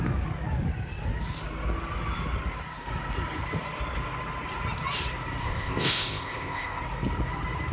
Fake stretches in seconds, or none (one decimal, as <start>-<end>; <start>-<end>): 5.4-6.8